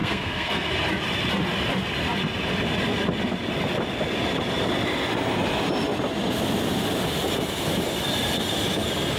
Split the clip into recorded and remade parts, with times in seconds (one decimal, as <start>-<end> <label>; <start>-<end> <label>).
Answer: 0.0-0.7 remade; 0.7-9.2 recorded